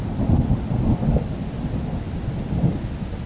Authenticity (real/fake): real